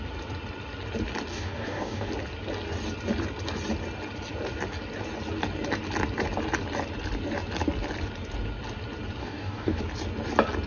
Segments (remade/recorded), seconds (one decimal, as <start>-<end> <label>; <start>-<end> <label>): 0.0-1.3 recorded; 1.3-2.1 remade; 2.1-9.2 recorded; 9.2-9.8 remade; 9.8-10.7 recorded

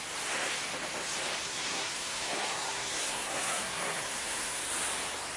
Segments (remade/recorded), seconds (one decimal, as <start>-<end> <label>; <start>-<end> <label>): 0.0-1.4 recorded; 1.4-4.6 remade; 4.6-5.4 recorded

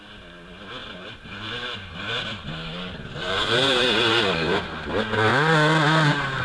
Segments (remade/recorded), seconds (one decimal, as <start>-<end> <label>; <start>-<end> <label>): 0.0-0.8 recorded; 0.8-4.6 remade; 4.6-6.4 recorded

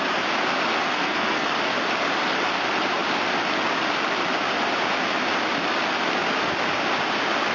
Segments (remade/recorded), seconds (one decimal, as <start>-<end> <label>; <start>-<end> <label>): 0.0-0.8 recorded; 0.8-1.5 remade; 1.5-7.5 recorded

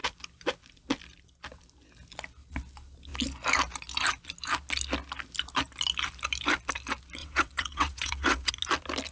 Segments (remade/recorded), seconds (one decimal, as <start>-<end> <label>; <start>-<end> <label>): 0.0-7.2 recorded; 7.2-8.5 remade; 8.5-9.1 recorded